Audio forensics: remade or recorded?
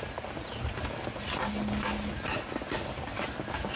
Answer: recorded